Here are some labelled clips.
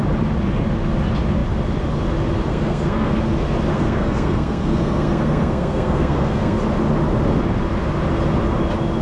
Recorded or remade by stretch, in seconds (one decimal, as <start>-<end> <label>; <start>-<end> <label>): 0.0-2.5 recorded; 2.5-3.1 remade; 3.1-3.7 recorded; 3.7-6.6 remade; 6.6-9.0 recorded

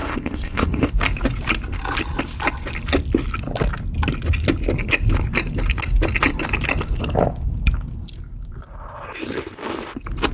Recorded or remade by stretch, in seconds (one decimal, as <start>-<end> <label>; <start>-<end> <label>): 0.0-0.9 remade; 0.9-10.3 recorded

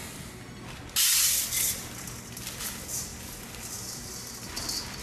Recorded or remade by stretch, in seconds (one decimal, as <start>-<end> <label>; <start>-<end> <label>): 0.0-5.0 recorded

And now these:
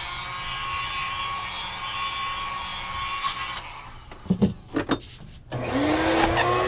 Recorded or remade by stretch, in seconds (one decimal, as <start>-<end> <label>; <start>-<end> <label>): 0.0-6.7 recorded

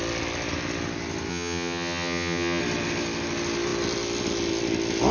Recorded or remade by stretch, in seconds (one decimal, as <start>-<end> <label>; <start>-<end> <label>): 0.0-1.3 recorded; 1.3-2.6 remade; 2.6-5.1 recorded

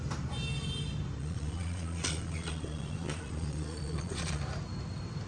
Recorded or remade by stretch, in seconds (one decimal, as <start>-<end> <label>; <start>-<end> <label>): 0.0-1.2 recorded; 1.2-4.4 remade; 4.4-5.3 recorded

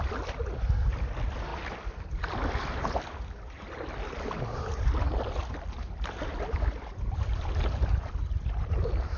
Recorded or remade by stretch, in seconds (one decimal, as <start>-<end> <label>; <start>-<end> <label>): 0.0-6.3 recorded; 6.3-8.1 remade; 8.1-9.2 recorded

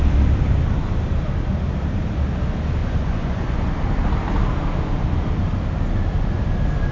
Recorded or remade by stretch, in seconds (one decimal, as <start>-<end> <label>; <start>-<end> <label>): 0.0-2.8 recorded; 2.8-3.7 remade; 3.7-6.9 recorded